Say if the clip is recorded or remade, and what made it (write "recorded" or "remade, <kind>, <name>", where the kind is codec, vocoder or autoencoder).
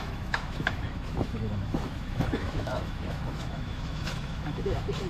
remade, autoencoder, DAC-VAE